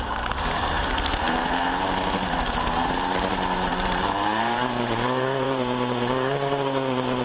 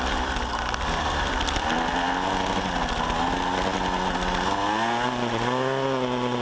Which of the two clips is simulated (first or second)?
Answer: first